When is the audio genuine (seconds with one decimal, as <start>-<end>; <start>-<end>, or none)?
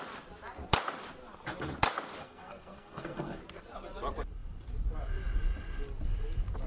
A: 0.0-2.2; 3.4-6.7